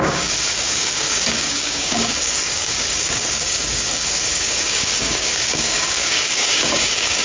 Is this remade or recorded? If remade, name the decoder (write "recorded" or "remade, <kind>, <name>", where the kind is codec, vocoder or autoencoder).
remade, codec, DAC